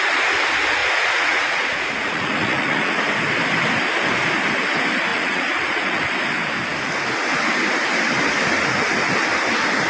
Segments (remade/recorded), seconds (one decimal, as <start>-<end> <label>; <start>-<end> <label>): 0.0-0.8 recorded; 0.8-3.0 remade; 3.0-5.1 recorded; 5.1-6.0 remade; 6.0-9.9 recorded